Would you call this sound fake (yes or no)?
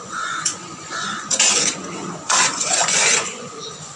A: yes